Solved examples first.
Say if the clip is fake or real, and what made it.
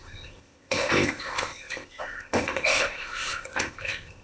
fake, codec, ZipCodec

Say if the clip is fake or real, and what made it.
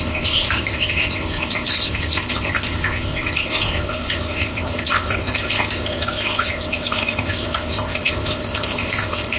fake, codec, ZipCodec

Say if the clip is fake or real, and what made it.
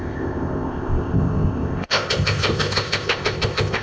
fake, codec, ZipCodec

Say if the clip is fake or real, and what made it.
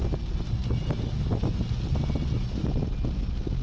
real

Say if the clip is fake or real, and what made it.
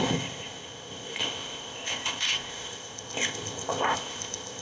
fake, codec, ZipCodec